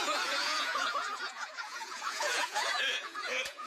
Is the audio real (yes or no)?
no